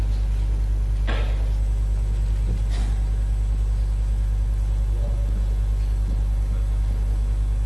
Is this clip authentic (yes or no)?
yes